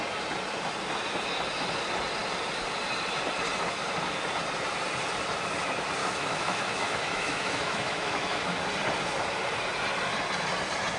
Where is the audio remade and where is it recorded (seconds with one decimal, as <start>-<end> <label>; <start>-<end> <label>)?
0.0-6.0 recorded; 6.0-8.6 remade; 8.6-11.0 recorded